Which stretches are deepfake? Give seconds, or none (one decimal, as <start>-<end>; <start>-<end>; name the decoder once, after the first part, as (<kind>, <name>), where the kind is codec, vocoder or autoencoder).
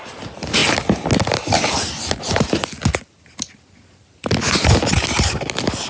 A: none